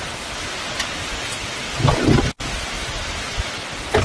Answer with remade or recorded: recorded